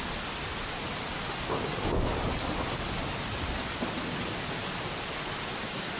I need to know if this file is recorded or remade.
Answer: recorded